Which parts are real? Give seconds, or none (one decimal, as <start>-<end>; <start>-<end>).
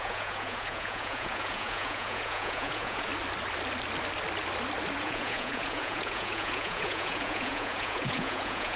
3.1-5.0